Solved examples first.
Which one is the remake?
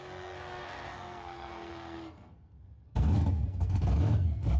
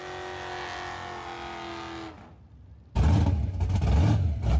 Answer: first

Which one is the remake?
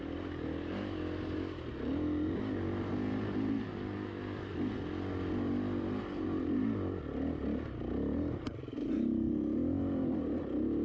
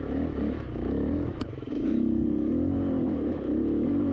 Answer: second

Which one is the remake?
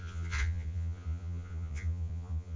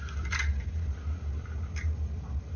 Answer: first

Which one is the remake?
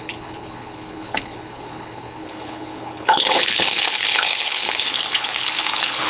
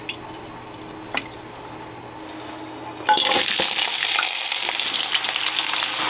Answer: first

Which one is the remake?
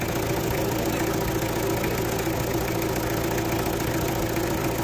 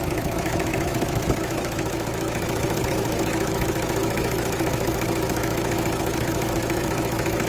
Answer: second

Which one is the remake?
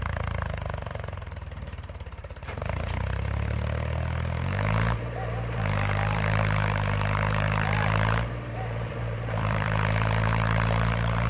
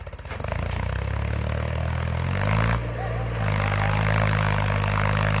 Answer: first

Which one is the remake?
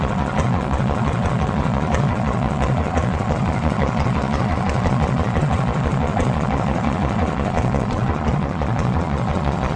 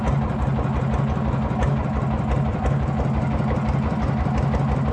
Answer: first